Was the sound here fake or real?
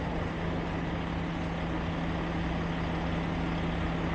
real